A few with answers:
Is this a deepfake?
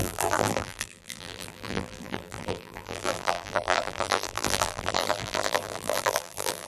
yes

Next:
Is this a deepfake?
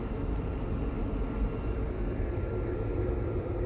yes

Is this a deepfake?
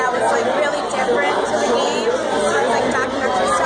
yes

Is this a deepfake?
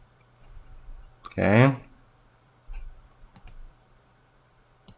yes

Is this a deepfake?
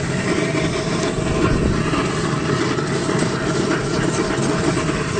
no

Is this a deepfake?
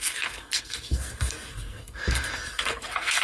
yes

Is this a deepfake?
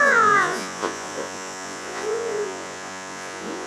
yes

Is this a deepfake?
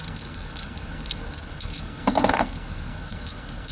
yes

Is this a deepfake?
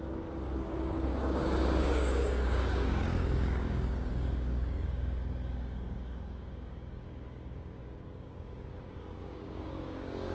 yes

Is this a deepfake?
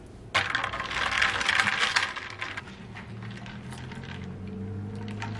no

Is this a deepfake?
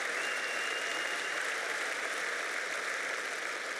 no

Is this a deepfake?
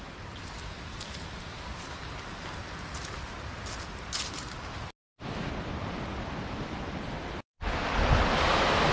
no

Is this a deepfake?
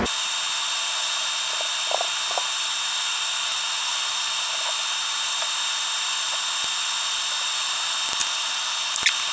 no